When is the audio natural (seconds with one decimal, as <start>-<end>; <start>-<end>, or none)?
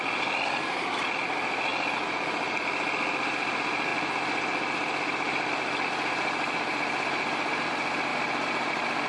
0.0-9.1